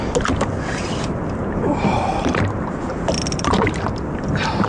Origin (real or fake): real